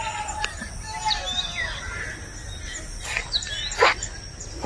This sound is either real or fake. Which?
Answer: real